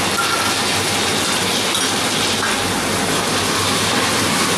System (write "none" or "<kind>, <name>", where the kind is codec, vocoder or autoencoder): none